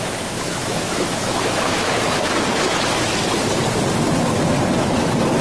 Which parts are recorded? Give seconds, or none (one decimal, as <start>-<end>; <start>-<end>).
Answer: 3.1-5.4